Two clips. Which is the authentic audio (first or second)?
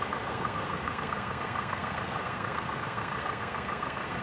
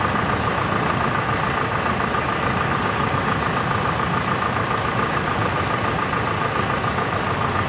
second